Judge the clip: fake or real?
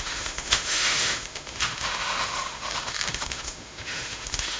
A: fake